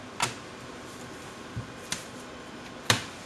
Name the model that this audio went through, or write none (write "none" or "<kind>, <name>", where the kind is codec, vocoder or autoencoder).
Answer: vocoder, BigVGAN v2